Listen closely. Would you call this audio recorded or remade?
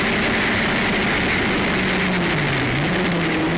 recorded